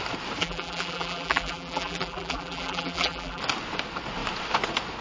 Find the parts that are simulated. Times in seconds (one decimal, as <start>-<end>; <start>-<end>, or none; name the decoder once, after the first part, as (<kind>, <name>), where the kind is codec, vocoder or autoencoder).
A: 0.4-3.4 (vocoder, BigVGAN v2)